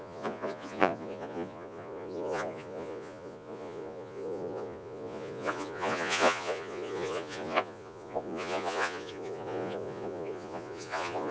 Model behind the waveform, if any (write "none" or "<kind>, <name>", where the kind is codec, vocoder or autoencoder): vocoder, Vocos